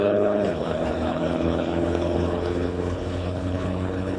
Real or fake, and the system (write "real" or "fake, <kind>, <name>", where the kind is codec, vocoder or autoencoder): fake, codec, HILCodec